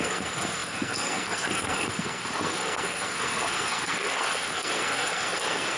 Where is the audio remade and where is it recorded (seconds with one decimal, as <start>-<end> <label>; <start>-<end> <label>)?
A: 0.0-5.8 remade